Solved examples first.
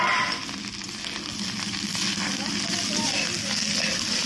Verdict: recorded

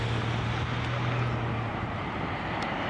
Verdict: recorded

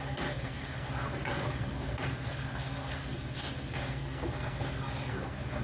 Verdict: remade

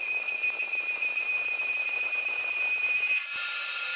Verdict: remade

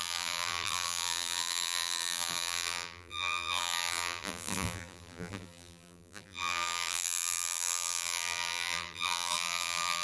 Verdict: remade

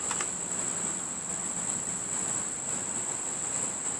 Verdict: recorded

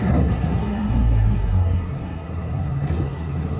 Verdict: remade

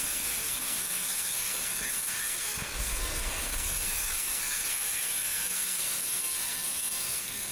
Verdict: remade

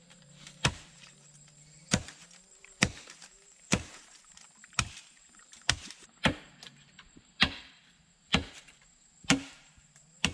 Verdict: remade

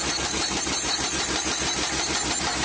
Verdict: remade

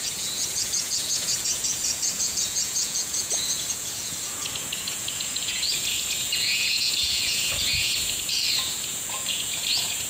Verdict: remade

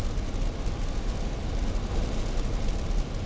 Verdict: remade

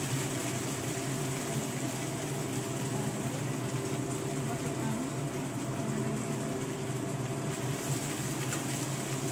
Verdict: recorded